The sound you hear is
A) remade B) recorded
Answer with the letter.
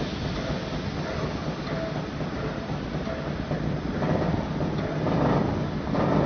B